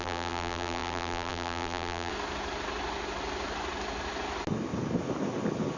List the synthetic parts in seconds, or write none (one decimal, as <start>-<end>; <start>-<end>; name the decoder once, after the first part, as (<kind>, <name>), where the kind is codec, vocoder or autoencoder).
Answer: 0.0-2.1 (vocoder, BigVGAN v2)